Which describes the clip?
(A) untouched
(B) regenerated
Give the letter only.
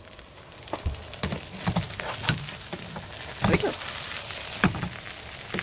A